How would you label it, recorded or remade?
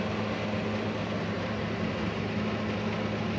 recorded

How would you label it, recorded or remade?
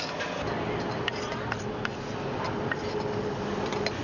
recorded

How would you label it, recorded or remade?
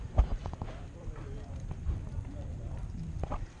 remade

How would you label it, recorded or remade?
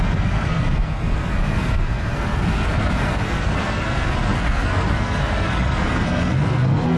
remade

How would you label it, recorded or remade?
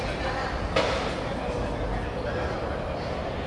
recorded